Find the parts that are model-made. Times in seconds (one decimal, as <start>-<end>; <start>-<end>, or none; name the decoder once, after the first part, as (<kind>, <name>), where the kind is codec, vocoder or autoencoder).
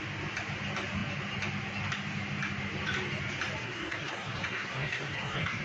3.6-5.6 (codec, SNAC)